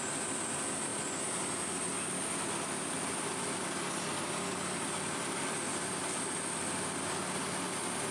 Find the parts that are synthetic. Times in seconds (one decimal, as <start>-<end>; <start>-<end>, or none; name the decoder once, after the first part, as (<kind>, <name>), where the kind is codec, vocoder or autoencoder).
6.0-6.7 (vocoder, BigVGAN v2)

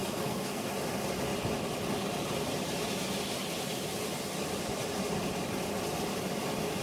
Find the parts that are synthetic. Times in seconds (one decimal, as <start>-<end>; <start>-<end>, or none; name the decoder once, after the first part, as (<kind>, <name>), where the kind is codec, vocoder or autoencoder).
0.0-0.7 (codec, SNAC)

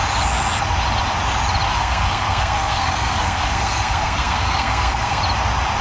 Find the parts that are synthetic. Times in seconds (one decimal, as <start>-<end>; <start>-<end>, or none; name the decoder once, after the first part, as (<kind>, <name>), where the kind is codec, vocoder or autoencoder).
1.7-5.2 (codec, SNAC)

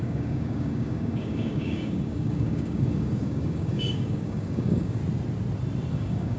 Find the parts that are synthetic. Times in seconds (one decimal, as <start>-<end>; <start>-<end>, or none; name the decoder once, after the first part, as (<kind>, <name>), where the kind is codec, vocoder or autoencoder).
0.0-5.0 (codec, DAC); 5.9-6.4

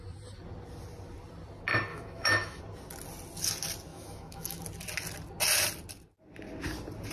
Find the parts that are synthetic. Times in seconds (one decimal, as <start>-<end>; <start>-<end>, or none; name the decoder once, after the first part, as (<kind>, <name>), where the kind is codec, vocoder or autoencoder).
1.9-2.6 (autoencoder, DAC-VAE); 3.9-4.6

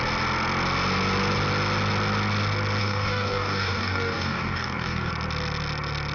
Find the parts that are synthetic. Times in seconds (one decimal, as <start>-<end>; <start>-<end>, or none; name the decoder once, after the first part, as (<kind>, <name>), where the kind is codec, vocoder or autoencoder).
2.8-5.1 (codec, DAC)

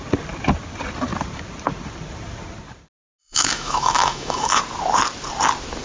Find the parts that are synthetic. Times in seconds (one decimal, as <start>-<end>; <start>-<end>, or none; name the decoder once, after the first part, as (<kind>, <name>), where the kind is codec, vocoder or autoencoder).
3.2-4.6 (autoencoder, DAC-VAE)